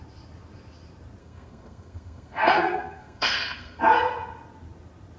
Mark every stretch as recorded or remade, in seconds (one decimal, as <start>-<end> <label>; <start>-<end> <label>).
0.0-1.2 recorded; 1.2-3.8 remade; 3.8-5.2 recorded